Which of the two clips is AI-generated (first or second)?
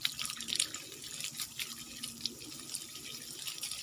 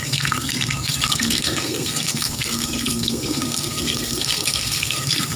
second